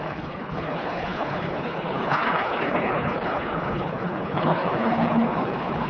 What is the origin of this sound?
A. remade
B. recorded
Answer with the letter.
A